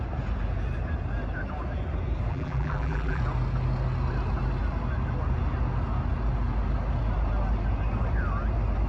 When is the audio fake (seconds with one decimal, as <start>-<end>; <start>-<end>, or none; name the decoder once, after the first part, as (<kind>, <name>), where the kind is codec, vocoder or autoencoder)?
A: 2.3-3.2 (vocoder, BigVGAN v2)